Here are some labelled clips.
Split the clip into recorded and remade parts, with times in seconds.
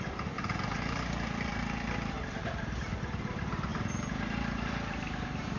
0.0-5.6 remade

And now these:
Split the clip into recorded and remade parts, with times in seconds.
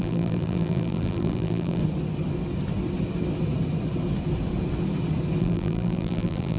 0.0-1.8 remade; 1.8-5.4 recorded; 5.4-6.6 remade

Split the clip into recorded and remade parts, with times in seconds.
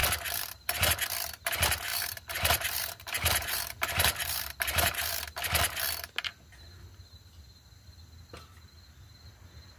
0.0-1.9 recorded; 1.9-3.6 remade; 3.6-4.2 recorded; 4.2-5.2 remade; 5.2-9.8 recorded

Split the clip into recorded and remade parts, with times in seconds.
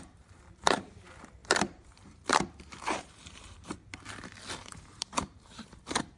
0.0-3.8 remade; 3.8-4.6 recorded; 4.6-6.2 remade